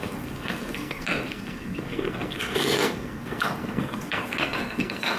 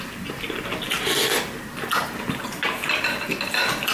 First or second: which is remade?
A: first